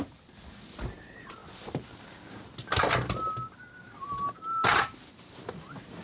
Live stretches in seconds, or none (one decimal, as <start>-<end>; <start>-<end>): 0.0-6.0